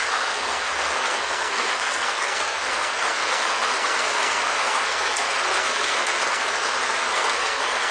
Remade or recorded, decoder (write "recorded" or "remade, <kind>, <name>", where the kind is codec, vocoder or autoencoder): remade, codec, SNAC